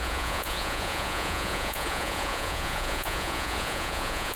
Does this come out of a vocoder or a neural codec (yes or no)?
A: yes